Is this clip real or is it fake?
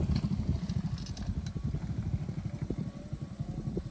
real